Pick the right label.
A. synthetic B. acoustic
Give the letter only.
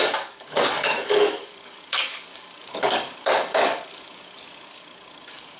A